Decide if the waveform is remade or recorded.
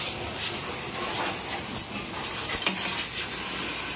recorded